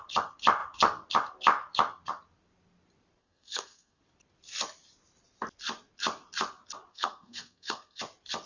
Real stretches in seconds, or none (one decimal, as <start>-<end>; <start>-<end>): 0.0-3.2; 4.0-6.9; 8.0-8.5